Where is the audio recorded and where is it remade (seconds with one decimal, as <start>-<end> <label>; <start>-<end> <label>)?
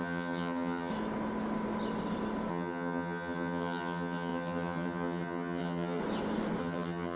0.0-0.9 remade; 0.9-2.5 recorded; 2.5-6.0 remade; 6.0-6.6 recorded; 6.6-7.2 remade